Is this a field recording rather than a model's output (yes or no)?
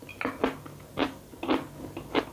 yes